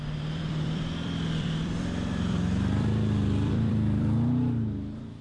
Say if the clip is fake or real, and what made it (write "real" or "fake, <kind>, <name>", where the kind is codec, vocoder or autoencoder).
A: fake, vocoder, BigVGAN v2